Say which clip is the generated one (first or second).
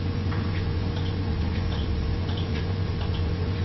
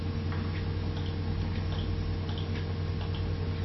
first